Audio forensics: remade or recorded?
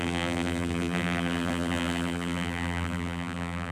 remade